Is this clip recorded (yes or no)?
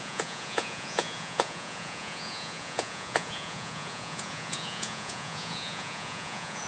no